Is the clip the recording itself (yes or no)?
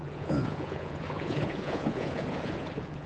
no